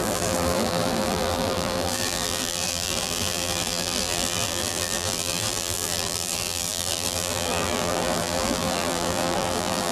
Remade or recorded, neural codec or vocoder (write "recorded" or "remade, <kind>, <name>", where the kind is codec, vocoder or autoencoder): remade, vocoder, BigVGAN v2